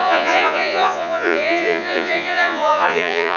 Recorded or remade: remade